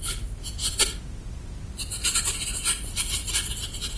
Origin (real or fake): real